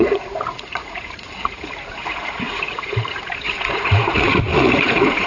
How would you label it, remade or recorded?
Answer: remade